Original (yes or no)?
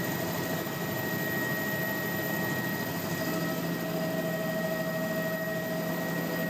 yes